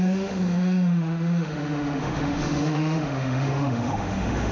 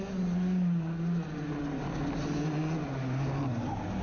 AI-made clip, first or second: first